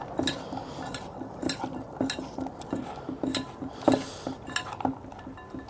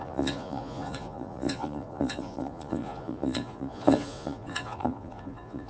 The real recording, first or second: first